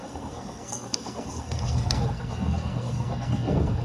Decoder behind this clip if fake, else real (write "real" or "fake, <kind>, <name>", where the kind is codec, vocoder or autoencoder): fake, codec, SNAC